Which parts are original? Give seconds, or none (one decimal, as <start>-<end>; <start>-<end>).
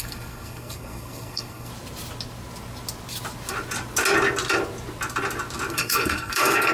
1.7-5.7